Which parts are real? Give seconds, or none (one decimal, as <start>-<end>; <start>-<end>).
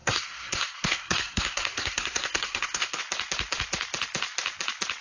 3.0-5.0